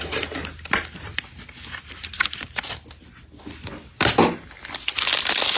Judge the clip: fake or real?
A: real